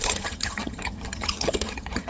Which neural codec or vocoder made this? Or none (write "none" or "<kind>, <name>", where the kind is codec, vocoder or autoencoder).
vocoder, HiFi-GAN